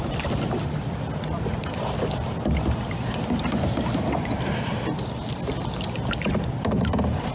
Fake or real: real